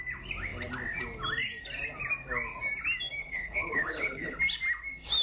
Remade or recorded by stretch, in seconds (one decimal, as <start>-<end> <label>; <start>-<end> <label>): 0.0-3.2 recorded; 3.2-4.4 remade; 4.4-5.2 recorded